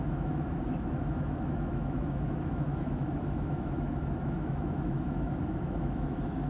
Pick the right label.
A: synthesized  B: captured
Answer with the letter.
A